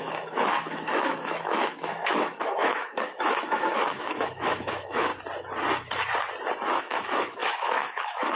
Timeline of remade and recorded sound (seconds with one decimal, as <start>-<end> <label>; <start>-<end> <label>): 0.0-5.1 remade; 5.1-6.8 recorded; 6.8-8.4 remade